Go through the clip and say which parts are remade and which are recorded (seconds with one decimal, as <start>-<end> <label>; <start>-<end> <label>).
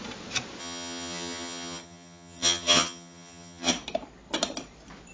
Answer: 0.0-0.6 recorded; 0.6-3.7 remade; 3.7-5.1 recorded